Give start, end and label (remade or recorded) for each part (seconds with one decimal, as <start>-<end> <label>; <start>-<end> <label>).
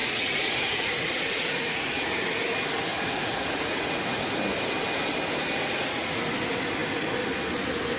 0.0-2.1 remade; 2.1-2.9 recorded; 2.9-4.3 remade; 4.3-5.6 recorded; 5.6-6.2 remade; 6.2-8.0 recorded